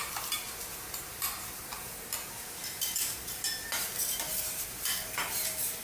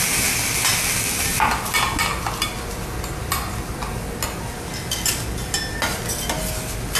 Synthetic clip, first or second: first